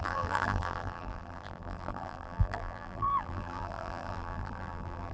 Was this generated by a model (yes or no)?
yes